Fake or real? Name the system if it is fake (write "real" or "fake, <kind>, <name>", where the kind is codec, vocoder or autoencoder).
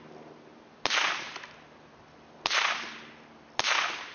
real